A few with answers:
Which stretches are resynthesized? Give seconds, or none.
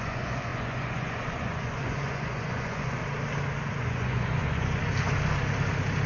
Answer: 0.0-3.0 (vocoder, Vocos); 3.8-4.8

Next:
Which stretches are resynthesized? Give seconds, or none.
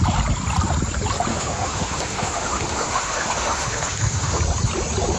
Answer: 1.3-4.4 (autoencoder, DAC-VAE)